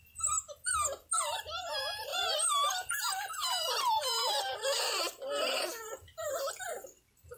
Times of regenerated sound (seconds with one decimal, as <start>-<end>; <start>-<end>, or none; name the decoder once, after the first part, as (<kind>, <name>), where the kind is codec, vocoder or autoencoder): 2.1-6.5 (vocoder, BigVGAN v2)